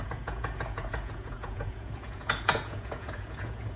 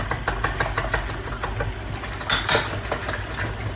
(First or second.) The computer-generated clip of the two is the first